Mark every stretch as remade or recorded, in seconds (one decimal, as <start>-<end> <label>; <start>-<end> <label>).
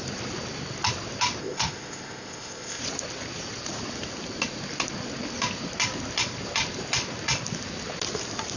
0.0-1.4 recorded; 1.4-2.8 remade; 2.8-8.6 recorded